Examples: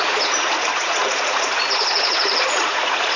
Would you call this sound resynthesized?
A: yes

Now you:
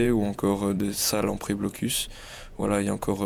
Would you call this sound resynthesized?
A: yes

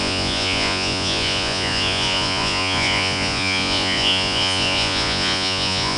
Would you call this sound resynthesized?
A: yes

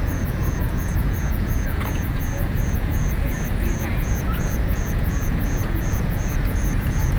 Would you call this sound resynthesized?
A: yes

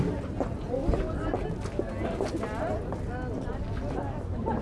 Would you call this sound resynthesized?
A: no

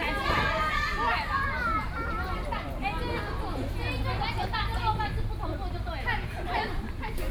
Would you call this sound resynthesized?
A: no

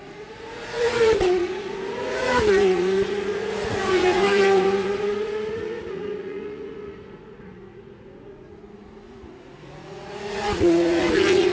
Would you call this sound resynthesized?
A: yes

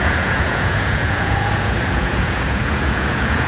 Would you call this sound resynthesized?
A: yes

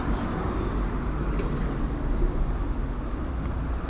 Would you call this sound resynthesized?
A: no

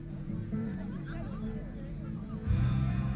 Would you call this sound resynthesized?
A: yes